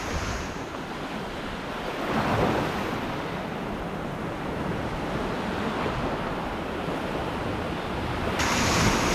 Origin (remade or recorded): recorded